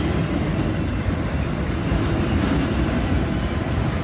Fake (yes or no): no